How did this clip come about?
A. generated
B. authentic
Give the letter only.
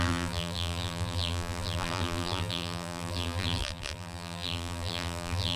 A